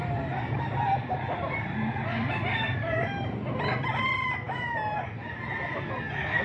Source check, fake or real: real